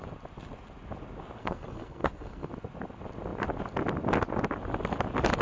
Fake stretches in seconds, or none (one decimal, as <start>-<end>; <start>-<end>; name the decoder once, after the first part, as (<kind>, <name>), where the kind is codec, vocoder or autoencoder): 1.4-2.5 (codec, SNAC)